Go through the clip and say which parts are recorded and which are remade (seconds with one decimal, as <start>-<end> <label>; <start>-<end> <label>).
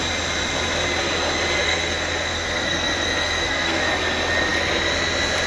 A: 0.0-1.6 recorded; 1.6-3.8 remade; 3.8-5.5 recorded